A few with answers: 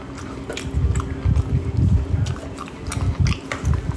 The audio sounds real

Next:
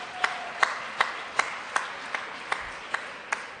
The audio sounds real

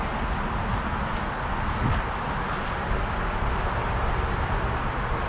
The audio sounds real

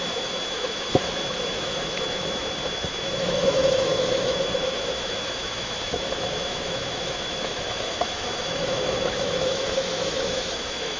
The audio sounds fake